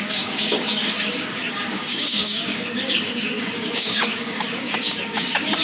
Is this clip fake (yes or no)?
yes